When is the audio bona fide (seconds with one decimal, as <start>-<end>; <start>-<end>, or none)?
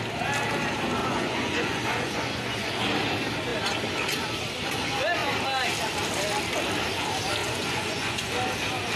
0.0-1.0; 2.7-7.4; 8.3-9.0